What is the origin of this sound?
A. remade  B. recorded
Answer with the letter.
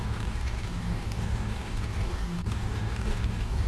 A